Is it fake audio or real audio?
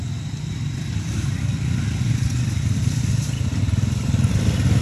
real